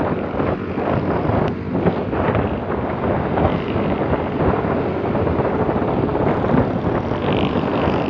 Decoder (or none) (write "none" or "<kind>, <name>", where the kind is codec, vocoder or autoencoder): none